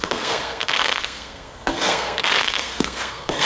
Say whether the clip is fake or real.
fake